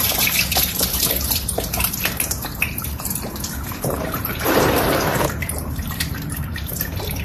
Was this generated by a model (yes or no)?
yes